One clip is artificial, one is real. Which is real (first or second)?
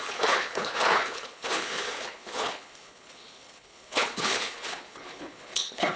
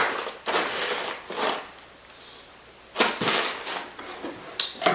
second